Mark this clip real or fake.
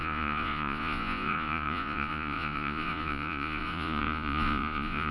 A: fake